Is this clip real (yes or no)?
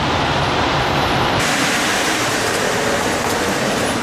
no